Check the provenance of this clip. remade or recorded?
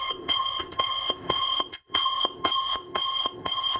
remade